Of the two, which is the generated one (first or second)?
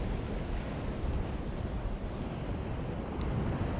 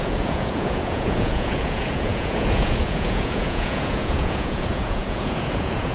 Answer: second